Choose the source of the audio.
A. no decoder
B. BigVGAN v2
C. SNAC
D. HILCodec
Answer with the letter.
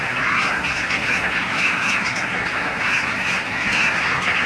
C